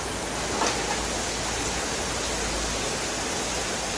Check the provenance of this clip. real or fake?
real